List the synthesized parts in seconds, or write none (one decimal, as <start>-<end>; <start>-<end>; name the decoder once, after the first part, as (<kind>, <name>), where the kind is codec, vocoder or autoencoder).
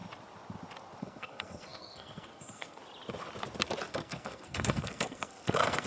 1.0-2.8 (codec, SNAC); 3.9-5.9